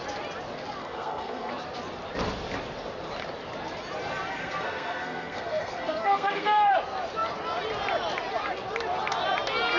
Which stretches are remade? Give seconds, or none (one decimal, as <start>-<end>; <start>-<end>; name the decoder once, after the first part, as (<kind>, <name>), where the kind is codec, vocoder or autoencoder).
0.8-1.5 (codec, SNAC); 4.4-6.7